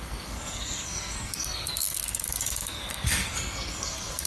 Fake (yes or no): yes